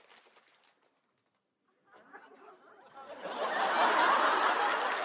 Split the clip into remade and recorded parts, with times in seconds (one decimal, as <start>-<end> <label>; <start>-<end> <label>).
0.0-5.0 recorded